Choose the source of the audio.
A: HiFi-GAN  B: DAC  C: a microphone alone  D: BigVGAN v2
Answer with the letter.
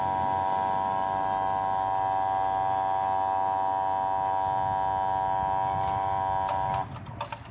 C